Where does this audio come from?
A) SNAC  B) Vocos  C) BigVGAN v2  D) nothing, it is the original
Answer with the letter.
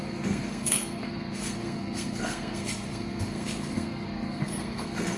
A